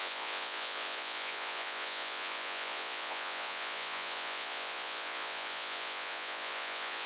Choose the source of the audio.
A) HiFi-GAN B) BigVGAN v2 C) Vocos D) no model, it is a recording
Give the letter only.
C